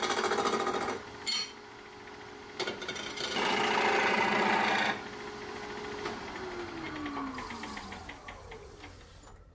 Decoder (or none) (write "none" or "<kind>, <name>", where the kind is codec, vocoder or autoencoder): none